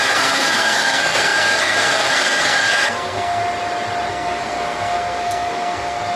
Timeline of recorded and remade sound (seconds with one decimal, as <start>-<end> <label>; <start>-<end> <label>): 0.0-3.4 remade; 3.4-4.1 recorded; 4.1-6.2 remade